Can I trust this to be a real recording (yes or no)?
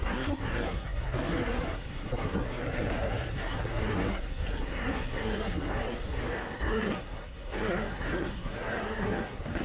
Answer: no